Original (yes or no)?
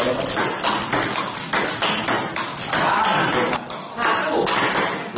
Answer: yes